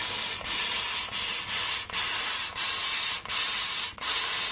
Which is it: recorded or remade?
recorded